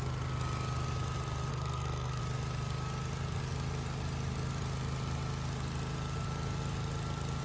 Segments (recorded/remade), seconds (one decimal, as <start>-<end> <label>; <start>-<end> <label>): 0.0-1.5 recorded; 1.5-2.2 remade; 2.2-7.4 recorded